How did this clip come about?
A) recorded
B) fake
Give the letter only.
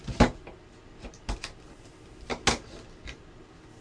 A